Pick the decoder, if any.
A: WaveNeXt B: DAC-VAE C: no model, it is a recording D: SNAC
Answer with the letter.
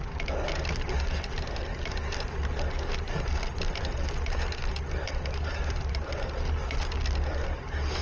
C